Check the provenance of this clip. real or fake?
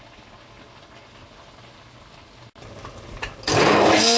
real